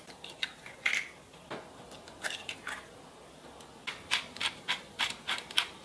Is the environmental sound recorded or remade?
recorded